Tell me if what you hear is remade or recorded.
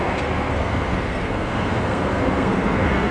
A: remade